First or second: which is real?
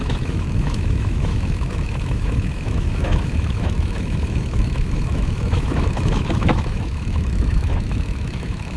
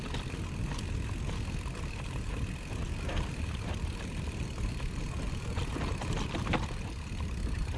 second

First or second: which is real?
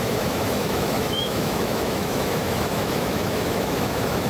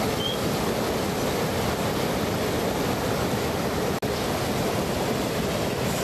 second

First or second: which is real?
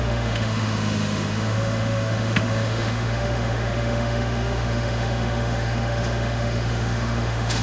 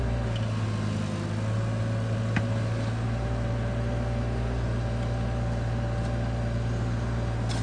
second